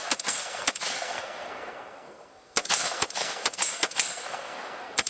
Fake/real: fake